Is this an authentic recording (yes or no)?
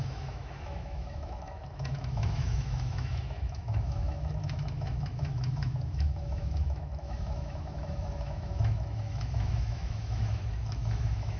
no